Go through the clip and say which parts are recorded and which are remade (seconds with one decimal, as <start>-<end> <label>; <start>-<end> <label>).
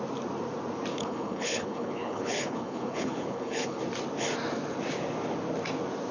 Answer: 0.0-0.9 recorded; 0.9-3.8 remade; 3.8-6.1 recorded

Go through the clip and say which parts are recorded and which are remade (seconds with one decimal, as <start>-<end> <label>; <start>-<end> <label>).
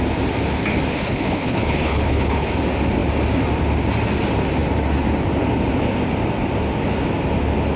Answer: 0.0-0.9 recorded; 0.9-2.5 remade; 2.5-7.8 recorded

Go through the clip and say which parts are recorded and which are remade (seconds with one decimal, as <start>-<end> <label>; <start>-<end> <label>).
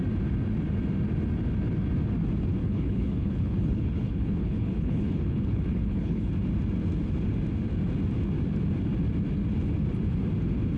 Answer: 0.0-2.6 recorded; 2.6-6.3 remade; 6.3-10.8 recorded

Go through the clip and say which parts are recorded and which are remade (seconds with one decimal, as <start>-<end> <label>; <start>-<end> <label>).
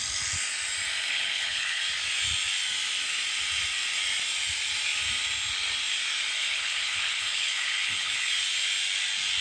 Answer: 0.0-1.1 recorded; 1.1-1.8 remade; 1.8-6.4 recorded; 6.4-8.3 remade; 8.3-9.4 recorded